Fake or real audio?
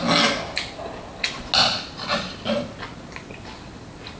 real